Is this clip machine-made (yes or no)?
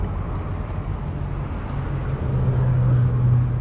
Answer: no